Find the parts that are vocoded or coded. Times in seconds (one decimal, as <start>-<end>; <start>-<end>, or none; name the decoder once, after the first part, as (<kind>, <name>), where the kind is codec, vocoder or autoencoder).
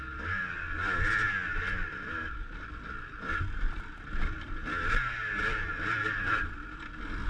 none